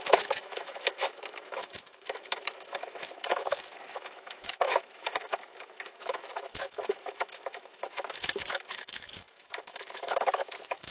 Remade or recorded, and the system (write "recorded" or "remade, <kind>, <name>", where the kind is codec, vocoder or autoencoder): remade, autoencoder, DAC-VAE